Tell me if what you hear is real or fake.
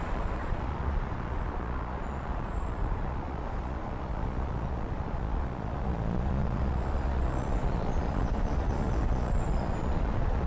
fake